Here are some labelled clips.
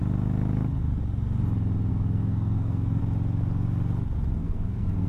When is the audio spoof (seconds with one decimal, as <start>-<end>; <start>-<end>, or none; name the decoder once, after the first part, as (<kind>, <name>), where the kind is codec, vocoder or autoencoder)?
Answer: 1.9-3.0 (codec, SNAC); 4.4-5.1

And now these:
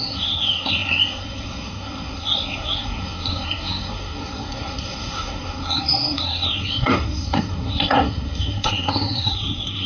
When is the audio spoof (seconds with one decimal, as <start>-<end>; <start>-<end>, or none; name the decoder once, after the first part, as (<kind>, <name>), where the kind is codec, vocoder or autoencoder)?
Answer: 0.0-9.9 (codec, SNAC)

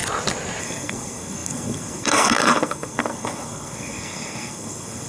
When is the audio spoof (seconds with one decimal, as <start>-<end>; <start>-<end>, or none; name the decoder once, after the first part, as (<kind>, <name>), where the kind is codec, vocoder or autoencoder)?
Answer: 0.6-5.1 (codec, SNAC)